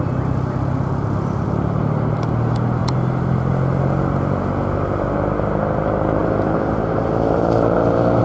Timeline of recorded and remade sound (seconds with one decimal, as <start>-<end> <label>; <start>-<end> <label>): 0.0-2.8 recorded; 2.8-3.5 remade; 3.5-6.2 recorded; 6.2-8.2 remade